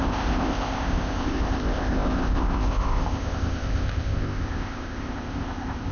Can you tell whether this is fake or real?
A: fake